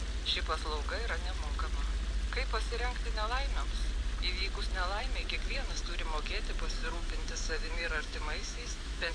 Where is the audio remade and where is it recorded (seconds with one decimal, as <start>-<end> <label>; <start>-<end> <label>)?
0.0-6.8 recorded; 6.8-9.1 remade